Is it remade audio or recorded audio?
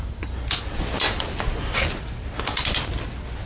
recorded